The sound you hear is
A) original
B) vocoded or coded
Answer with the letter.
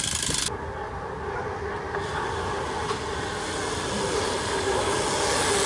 A